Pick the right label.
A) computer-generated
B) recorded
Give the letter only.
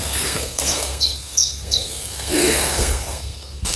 A